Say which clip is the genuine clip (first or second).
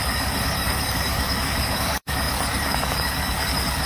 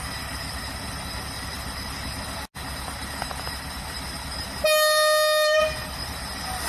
second